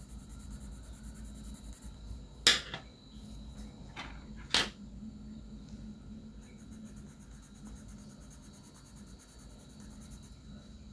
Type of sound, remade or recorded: recorded